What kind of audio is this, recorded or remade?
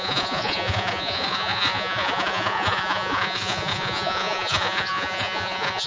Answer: remade